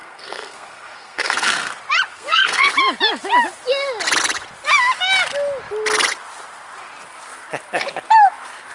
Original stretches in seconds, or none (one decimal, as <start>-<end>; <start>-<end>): 1.7-2.1; 2.7-8.7